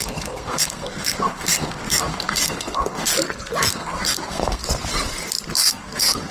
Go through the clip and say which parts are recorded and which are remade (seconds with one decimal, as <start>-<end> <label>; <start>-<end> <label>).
0.0-3.1 remade; 3.1-3.7 recorded; 3.7-4.6 remade; 4.6-5.6 recorded; 5.6-6.3 remade

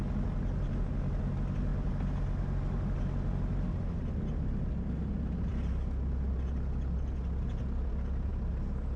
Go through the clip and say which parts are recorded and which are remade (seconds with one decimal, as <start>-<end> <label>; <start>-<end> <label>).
0.0-9.0 recorded

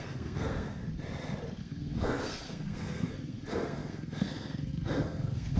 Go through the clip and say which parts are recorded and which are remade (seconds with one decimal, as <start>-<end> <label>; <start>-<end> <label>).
0.0-0.8 remade; 0.8-1.6 recorded; 1.6-5.6 remade

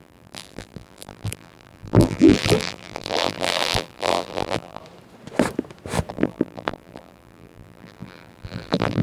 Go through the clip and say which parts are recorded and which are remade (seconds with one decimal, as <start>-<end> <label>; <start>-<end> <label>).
0.0-4.8 remade; 4.8-6.1 recorded; 6.1-9.0 remade

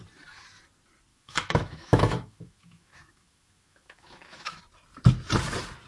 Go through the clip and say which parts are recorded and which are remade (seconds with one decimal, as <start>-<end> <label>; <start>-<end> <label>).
0.0-1.1 recorded; 1.1-4.6 remade; 4.6-5.9 recorded

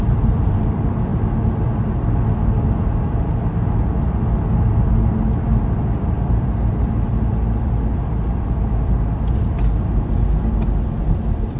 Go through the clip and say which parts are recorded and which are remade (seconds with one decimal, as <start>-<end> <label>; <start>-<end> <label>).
0.0-1.1 remade; 1.1-5.4 recorded; 5.4-11.6 remade